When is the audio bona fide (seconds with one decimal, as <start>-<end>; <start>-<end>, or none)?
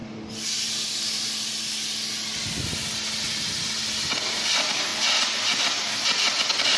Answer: 0.0-6.8